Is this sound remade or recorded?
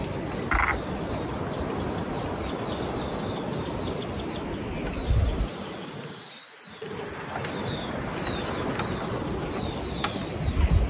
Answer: recorded